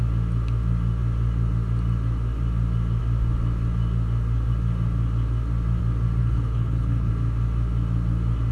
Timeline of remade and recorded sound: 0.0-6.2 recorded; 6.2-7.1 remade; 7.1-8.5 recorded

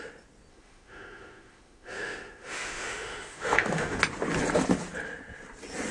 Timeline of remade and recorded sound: 0.0-0.5 recorded; 0.5-4.0 remade; 4.0-5.9 recorded

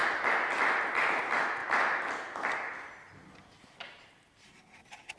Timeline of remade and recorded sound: 0.0-5.2 recorded

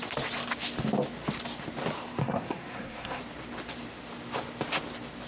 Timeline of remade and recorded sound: 0.0-2.2 recorded; 2.2-3.2 remade; 3.2-5.3 recorded

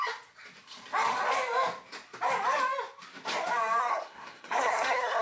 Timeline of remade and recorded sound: 0.0-3.8 recorded; 3.8-5.2 remade